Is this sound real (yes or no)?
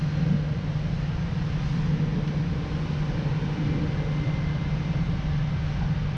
yes